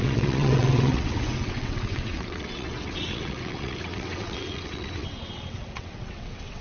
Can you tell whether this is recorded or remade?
remade